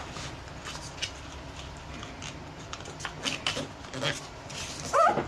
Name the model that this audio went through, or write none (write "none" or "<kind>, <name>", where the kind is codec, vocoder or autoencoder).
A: none